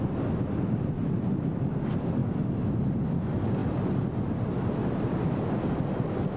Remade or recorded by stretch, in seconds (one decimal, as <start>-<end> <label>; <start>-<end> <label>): 0.0-6.4 recorded